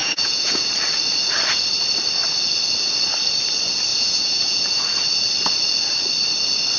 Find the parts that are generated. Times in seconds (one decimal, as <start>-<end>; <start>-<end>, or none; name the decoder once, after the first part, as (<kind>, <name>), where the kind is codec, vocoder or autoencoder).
0.0-0.6 (vocoder, Vocos); 3.9-4.8